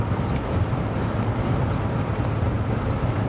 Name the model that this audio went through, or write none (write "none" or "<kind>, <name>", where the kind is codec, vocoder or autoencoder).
vocoder, BigVGAN v2